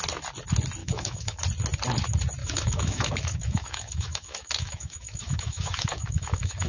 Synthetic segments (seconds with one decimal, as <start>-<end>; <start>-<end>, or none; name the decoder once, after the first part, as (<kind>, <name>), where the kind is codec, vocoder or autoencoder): 0.8-1.4 (autoencoder, DAC-VAE); 2.4-6.7